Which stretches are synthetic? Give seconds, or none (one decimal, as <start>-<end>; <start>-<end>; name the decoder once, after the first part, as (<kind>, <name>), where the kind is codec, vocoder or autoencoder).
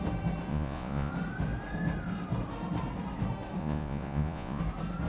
0.5-1.1 (vocoder, Vocos); 3.6-4.6